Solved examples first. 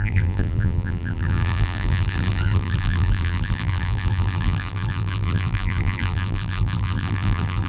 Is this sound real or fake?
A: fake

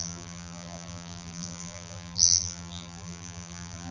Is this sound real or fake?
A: fake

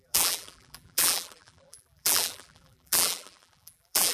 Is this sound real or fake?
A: fake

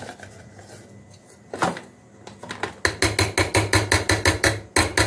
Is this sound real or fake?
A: real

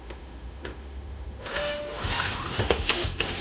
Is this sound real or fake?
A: fake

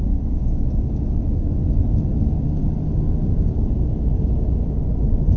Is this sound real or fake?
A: real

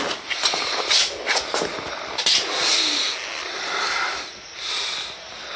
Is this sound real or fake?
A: real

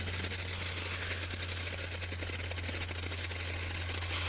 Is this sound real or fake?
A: real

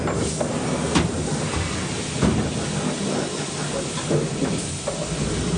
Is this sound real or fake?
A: real